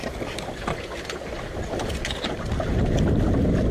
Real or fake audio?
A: real